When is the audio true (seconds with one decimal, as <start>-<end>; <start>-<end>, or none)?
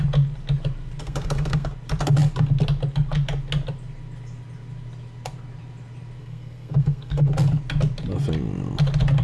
0.0-1.0; 1.7-6.2; 7.3-9.2